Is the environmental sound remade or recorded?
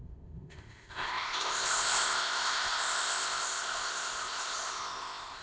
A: remade